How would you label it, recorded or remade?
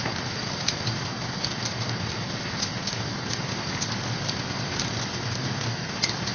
recorded